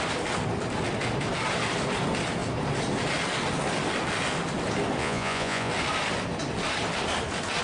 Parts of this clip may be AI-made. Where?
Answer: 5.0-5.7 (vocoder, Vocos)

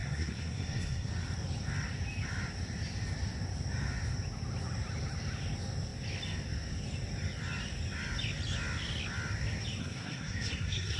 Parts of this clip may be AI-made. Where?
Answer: 0.0-1.1 (codec, SNAC); 9.8-11.0

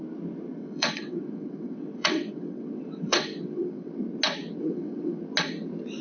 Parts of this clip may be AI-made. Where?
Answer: 0.6-3.9 (vocoder, WaveNeXt); 4.6-5.2

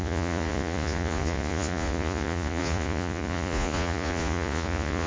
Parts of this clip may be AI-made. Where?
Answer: 0.0-5.1 (vocoder, Vocos)

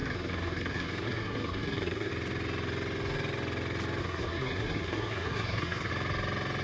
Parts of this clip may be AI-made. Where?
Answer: 0.0-2.1 (codec, SNAC); 4.0-5.9

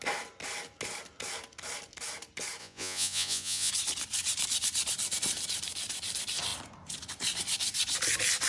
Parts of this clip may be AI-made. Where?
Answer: 2.6-3.7 (vocoder, Vocos)

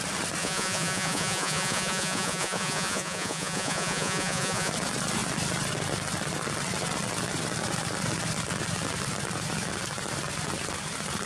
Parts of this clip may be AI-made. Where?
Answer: 0.4-4.7 (vocoder, Vocos)